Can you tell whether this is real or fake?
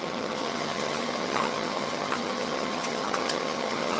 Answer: fake